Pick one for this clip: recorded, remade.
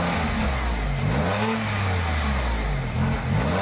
recorded